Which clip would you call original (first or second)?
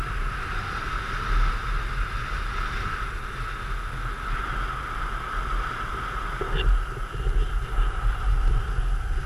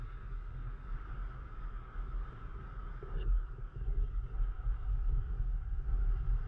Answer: first